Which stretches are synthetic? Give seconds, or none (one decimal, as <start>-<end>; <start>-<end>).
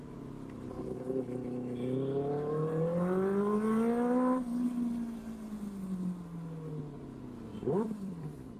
7.5-8.6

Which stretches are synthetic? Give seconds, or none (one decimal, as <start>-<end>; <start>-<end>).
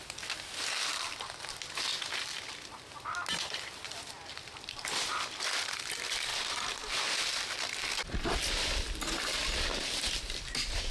1.9-5.8; 6.3-7.5